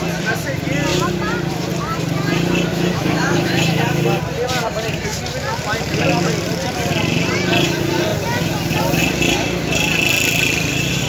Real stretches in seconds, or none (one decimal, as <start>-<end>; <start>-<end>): 0.0-2.7; 4.2-11.1